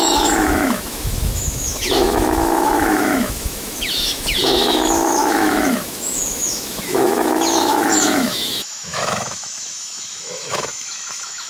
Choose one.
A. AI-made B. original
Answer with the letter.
A